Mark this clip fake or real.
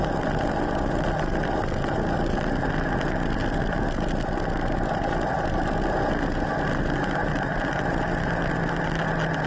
real